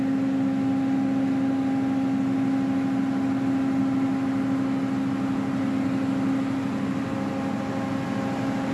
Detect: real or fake real